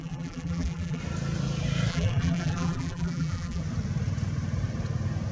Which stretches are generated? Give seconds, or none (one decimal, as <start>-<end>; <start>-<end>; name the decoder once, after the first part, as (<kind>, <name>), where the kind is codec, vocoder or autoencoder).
0.0-1.0 (vocoder, BigVGAN v2); 1.9-3.6